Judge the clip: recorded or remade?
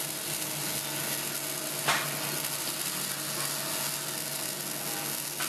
recorded